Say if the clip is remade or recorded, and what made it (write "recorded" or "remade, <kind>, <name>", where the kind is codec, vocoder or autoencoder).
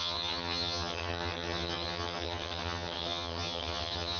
remade, vocoder, HiFi-GAN